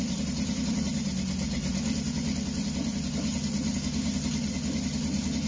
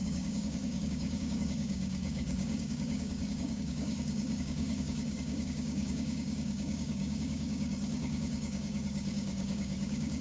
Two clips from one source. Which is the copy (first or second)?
second